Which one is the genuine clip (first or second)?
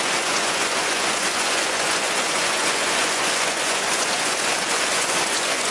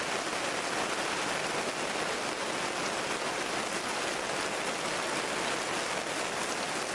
second